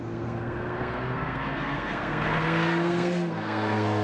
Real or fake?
fake